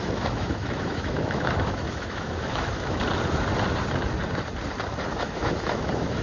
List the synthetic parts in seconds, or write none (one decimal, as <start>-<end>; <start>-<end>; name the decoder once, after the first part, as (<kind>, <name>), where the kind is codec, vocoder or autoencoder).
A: 0.0-3.0 (autoencoder, DAC-VAE); 5.1-6.2